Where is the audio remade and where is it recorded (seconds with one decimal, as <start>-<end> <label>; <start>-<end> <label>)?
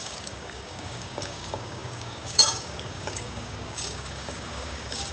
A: 0.0-5.1 remade